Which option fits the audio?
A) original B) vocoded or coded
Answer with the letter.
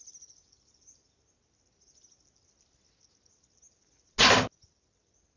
A